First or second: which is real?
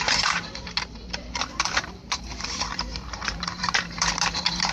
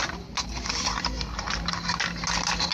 second